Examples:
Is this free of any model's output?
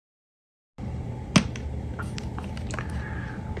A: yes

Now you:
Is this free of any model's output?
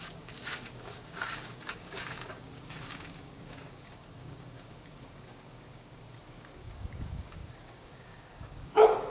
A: no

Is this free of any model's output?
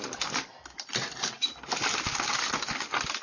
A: yes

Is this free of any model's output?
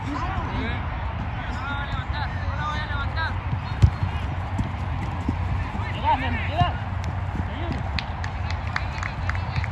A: yes